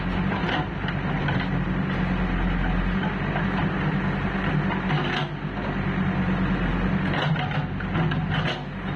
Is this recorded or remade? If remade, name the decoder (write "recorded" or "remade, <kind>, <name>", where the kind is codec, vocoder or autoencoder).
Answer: recorded